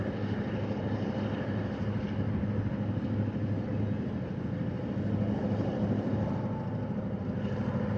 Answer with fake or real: real